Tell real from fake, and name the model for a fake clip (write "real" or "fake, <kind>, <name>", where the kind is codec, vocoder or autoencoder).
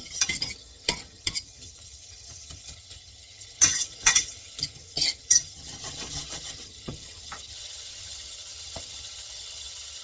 fake, vocoder, HiFi-GAN